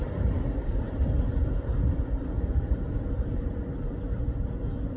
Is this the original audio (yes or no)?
yes